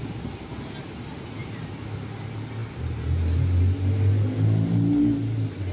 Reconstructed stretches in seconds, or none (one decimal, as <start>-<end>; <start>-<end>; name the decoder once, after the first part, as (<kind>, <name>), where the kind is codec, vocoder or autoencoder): none